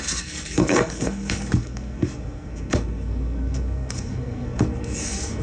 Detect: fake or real fake